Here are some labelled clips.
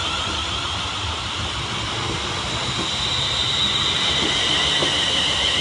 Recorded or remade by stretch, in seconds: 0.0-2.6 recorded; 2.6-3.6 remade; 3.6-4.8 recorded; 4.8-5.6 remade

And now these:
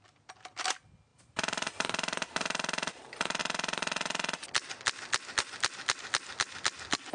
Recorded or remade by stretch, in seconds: 0.0-1.1 recorded; 1.1-3.4 remade; 3.4-7.1 recorded